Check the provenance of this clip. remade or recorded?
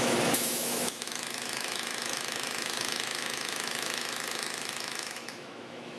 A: remade